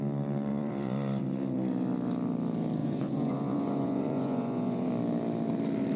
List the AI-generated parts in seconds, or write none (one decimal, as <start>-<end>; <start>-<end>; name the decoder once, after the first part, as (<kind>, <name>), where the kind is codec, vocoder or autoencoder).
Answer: 0.5-1.2 (vocoder, Vocos); 2.8-4.9